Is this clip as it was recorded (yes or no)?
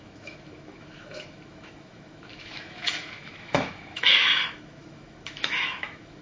no